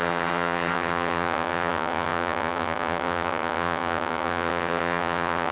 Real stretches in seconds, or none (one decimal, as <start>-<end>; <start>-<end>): none